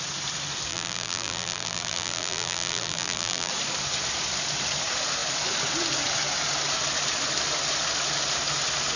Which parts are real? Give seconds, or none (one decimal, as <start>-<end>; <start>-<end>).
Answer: 0.0-0.7; 3.5-9.0